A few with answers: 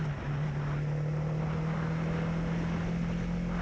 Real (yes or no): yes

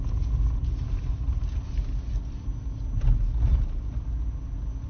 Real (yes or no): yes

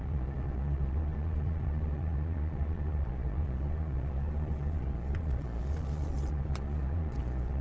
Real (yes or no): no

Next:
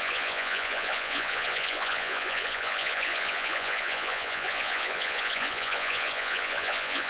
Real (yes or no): no